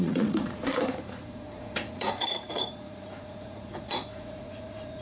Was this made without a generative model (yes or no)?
no